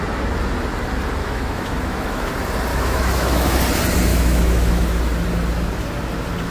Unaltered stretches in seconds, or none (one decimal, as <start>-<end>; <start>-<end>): 0.0-1.2; 2.3-2.7; 3.6-4.1; 5.0-6.5